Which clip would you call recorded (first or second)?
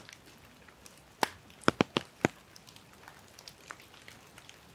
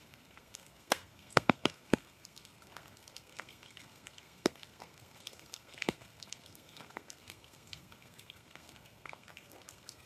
first